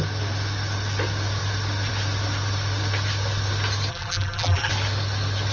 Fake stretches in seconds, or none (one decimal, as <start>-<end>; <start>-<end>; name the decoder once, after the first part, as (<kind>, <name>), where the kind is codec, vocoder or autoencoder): 3.9-4.7 (vocoder, BigVGAN v2)